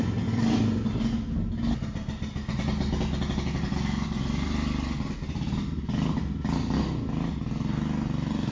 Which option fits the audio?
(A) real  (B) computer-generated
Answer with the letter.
A